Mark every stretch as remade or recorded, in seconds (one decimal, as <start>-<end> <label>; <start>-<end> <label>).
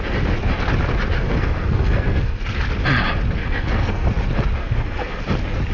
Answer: 0.0-1.2 recorded; 1.2-2.4 remade; 2.4-3.4 recorded; 3.4-4.1 remade; 4.1-4.6 recorded; 4.6-5.2 remade; 5.2-5.7 recorded